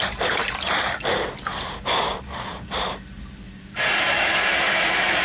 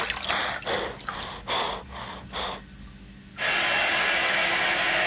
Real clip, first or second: second